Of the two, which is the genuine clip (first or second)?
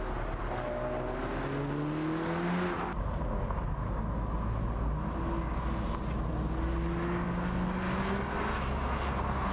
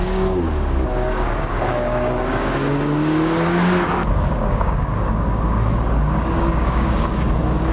first